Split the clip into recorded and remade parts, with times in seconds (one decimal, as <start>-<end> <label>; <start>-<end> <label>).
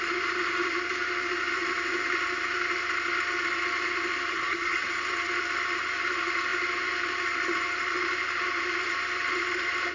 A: 0.0-4.3 recorded; 4.3-4.9 remade; 4.9-9.9 recorded